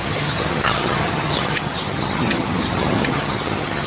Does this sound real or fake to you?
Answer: fake